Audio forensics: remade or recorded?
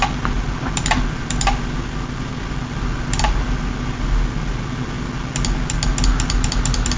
recorded